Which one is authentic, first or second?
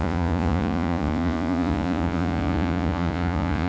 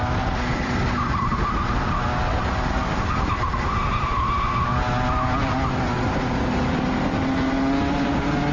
second